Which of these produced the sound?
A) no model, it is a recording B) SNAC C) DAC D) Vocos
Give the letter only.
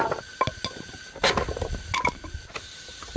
A